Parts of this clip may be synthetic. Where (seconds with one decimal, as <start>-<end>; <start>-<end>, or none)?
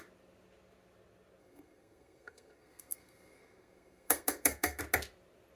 1.4-4.8